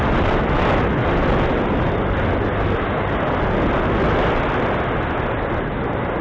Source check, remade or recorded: recorded